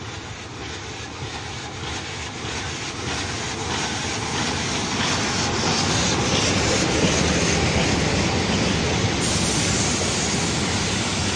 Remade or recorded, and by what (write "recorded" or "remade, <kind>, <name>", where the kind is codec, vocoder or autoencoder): recorded